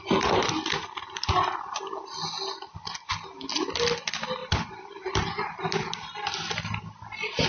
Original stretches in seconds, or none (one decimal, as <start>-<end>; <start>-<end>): 0.0-4.4; 4.9-7.5